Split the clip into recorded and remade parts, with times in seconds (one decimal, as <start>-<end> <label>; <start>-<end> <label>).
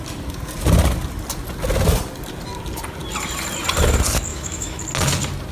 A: 0.0-4.3 recorded; 4.3-4.8 remade; 4.8-5.5 recorded